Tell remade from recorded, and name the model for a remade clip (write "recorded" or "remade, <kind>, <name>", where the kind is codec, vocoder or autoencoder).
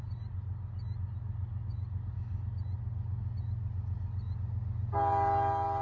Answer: recorded